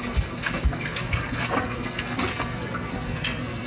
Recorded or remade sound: remade